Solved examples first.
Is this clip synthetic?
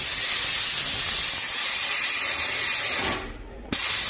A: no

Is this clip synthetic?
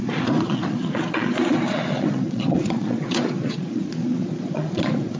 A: yes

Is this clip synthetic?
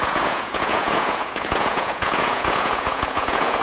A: yes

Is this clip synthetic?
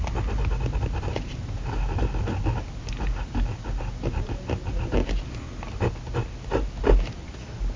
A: no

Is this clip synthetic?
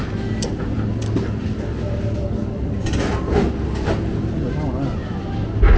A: no